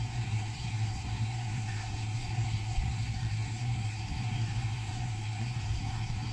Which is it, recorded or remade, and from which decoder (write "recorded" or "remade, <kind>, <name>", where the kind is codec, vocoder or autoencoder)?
remade, codec, SNAC